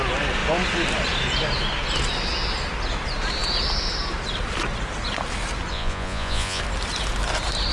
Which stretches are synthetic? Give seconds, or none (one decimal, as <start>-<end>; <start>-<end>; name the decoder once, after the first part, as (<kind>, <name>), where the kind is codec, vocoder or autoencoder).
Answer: 5.7-6.6 (vocoder, Vocos)

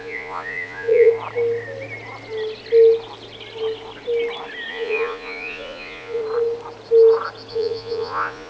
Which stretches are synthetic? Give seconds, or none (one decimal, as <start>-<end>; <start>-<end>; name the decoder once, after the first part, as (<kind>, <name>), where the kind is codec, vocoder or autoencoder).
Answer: 0.0-1.1 (vocoder, Vocos); 4.7-6.2; 7.5-8.5

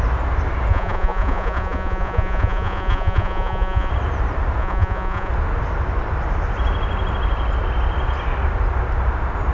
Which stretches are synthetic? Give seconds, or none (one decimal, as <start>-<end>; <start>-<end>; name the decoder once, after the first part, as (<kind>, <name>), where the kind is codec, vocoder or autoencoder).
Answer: 0.7-3.9 (vocoder, Vocos); 4.6-5.3

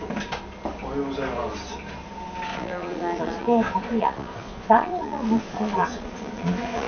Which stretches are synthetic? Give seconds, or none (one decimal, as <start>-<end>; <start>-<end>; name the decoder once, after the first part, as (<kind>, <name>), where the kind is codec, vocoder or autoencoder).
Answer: 2.5-6.9 (vocoder, Vocos)